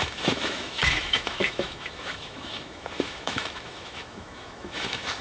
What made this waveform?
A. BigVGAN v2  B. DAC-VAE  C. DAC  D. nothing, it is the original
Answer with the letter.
B